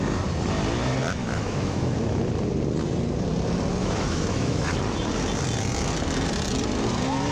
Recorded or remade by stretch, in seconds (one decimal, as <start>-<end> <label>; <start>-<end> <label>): 0.0-1.2 recorded; 1.2-1.9 remade; 1.9-3.8 recorded; 3.8-4.8 remade; 4.8-7.3 recorded